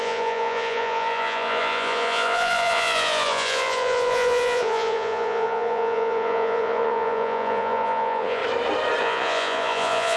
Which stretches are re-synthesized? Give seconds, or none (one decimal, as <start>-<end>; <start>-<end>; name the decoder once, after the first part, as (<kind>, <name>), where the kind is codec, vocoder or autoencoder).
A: 0.0-8.4 (vocoder, Vocos); 9.0-10.2